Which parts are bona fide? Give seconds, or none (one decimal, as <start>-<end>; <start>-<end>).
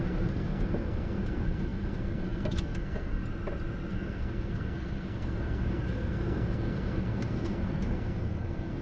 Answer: 3.2-3.9